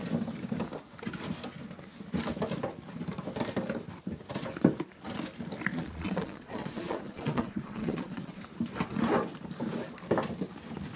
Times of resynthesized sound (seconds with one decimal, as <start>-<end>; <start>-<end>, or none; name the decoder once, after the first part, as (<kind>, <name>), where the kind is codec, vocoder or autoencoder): 5.7-8.4 (vocoder, Vocos)